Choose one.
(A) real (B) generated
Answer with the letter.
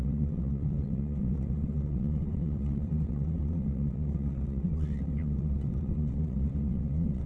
B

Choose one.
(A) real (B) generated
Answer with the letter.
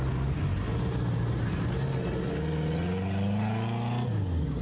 A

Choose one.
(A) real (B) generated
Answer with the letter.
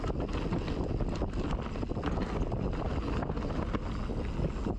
A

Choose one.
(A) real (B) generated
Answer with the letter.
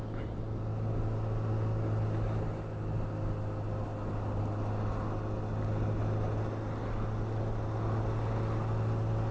A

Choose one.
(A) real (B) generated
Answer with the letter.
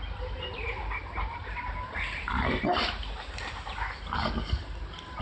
A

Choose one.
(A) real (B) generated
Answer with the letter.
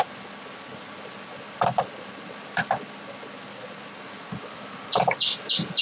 A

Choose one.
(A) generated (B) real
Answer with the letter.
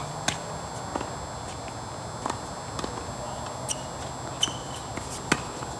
B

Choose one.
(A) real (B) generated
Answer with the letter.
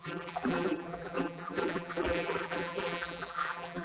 B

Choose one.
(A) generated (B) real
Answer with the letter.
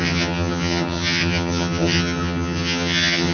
A